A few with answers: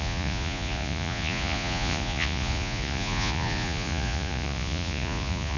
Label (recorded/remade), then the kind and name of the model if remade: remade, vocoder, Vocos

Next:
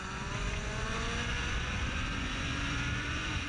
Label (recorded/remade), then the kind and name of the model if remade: remade, vocoder, Vocos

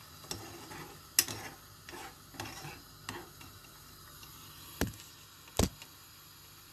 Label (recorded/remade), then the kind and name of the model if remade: recorded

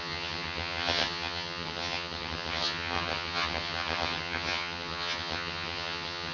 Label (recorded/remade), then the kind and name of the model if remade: remade, vocoder, HiFi-GAN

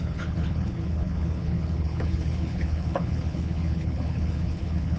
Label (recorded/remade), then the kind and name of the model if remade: remade, codec, HILCodec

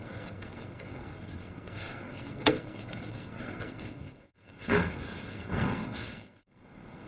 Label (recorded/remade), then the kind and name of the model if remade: remade, codec, SNAC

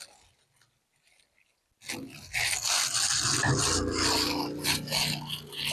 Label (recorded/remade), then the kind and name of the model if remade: recorded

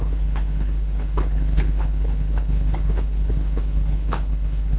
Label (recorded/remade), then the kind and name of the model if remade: remade, codec, HILCodec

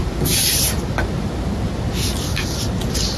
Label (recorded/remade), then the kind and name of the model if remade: recorded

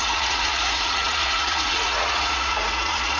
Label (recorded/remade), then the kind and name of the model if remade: remade, vocoder, Vocos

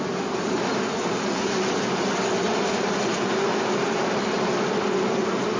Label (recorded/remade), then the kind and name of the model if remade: recorded